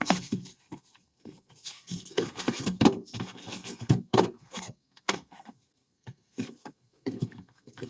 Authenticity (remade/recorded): remade